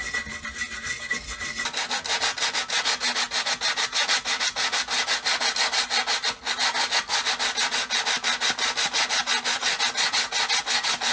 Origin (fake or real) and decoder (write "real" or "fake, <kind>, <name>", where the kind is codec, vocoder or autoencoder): real